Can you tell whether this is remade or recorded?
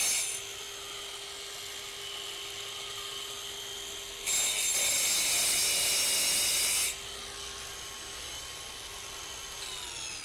recorded